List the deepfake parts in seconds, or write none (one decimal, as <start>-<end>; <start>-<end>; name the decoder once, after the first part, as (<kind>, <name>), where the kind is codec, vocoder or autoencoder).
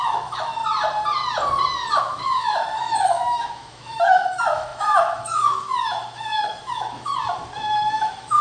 0.0-0.6 (autoencoder, DAC-VAE); 2.0-7.1; 8.0-8.4